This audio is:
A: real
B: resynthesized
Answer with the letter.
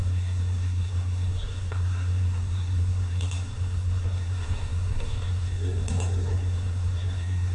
B